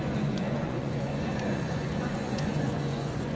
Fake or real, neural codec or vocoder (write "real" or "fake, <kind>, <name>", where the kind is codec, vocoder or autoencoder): fake, vocoder, Vocos